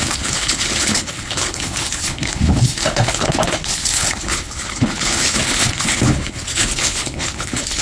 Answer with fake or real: fake